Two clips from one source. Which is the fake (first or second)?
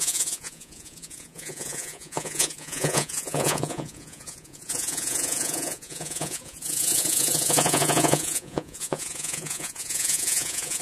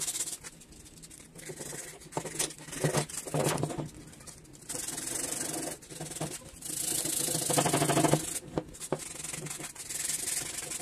first